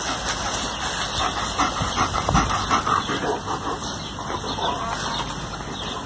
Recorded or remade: recorded